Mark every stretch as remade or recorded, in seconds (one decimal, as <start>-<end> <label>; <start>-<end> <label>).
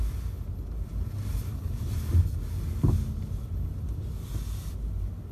0.0-5.3 recorded